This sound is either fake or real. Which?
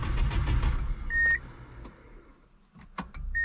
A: real